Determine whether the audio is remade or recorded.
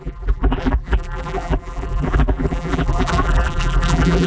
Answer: remade